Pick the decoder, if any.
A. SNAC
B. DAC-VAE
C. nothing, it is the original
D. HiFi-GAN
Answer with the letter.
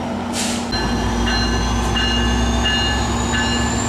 C